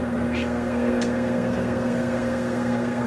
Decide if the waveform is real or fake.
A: fake